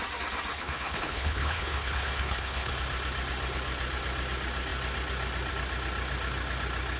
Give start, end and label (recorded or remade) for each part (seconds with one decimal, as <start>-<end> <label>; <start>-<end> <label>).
0.0-0.5 recorded; 0.5-2.7 remade; 2.7-7.0 recorded